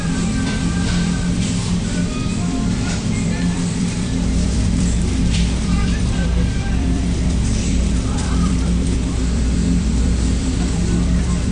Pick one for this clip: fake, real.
fake